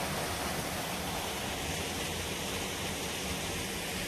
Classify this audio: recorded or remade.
recorded